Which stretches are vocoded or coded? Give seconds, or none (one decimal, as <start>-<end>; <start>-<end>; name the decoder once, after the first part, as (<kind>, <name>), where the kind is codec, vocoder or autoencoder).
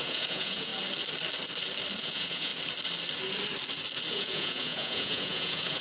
0.0-0.7 (vocoder, Vocos); 2.0-2.5; 4.1-5.8